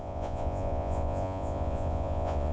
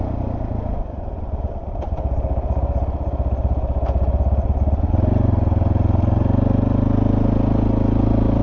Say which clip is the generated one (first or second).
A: first